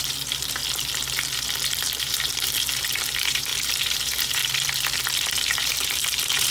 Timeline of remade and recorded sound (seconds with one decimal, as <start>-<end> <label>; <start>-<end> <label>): 0.0-0.6 remade; 0.6-1.7 recorded; 1.7-4.4 remade; 4.4-5.7 recorded; 5.7-6.5 remade